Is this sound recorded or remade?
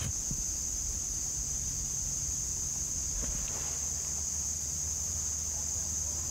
recorded